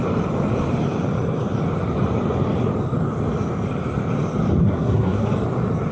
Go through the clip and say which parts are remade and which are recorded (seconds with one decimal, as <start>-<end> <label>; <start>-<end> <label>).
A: 0.0-4.6 recorded; 4.6-5.3 remade; 5.3-5.9 recorded